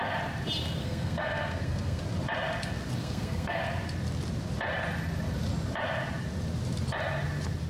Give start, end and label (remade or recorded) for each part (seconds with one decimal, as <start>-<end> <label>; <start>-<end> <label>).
0.0-0.8 recorded; 0.8-2.0 remade; 2.0-3.0 recorded; 3.0-3.6 remade; 3.6-7.7 recorded